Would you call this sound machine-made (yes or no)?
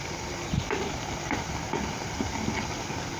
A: no